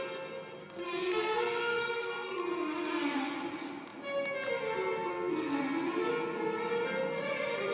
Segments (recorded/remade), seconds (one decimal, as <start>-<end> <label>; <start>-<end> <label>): 0.0-0.6 recorded; 0.6-2.4 remade; 2.4-5.1 recorded; 5.1-5.6 remade; 5.6-7.7 recorded